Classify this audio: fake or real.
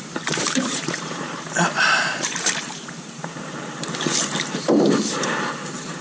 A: fake